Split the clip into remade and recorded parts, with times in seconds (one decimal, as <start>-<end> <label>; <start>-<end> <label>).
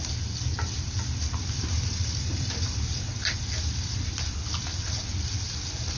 0.0-1.4 recorded; 1.4-5.0 remade; 5.0-6.0 recorded